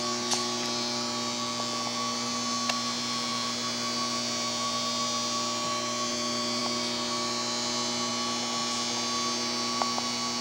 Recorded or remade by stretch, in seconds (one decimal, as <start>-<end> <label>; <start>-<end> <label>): 0.0-10.4 recorded